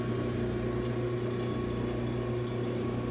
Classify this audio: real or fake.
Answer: real